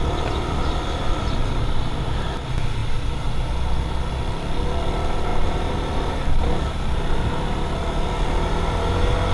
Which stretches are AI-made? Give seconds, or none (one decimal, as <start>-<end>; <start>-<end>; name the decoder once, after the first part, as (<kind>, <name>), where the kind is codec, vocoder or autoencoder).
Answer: none